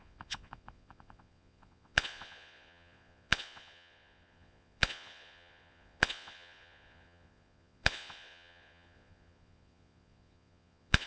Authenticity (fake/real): fake